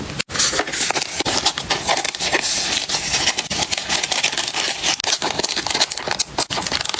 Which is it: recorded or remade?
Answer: recorded